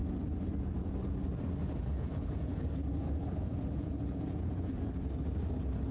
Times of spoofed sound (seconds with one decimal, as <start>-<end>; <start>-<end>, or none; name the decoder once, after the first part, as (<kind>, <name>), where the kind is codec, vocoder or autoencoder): 1.6-4.9 (vocoder, Vocos)